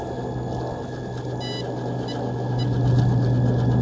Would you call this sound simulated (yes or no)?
no